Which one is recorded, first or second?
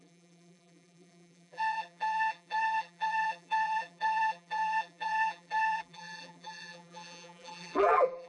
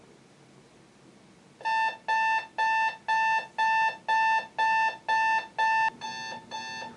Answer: second